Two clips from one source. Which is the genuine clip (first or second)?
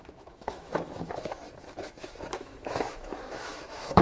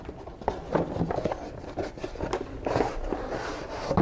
second